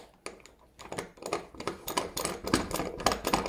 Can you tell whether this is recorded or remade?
recorded